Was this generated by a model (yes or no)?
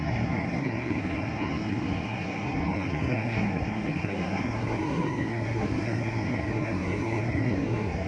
yes